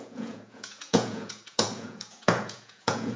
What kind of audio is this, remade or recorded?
remade